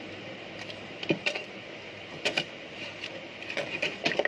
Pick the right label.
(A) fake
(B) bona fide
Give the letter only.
A